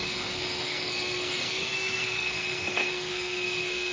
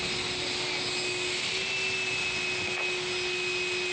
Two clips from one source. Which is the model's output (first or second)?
first